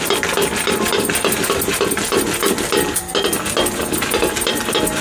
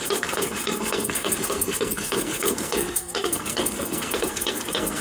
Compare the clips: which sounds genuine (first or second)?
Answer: first